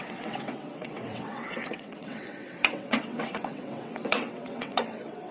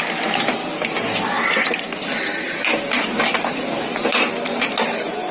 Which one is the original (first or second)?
second